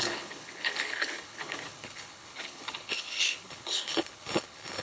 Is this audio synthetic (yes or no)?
yes